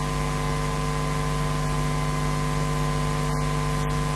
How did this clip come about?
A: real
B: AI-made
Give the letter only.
A